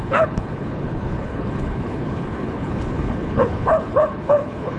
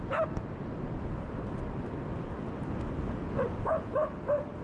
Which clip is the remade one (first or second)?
first